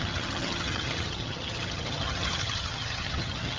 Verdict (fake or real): fake